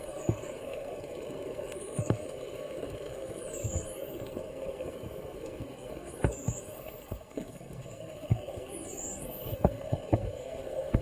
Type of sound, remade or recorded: remade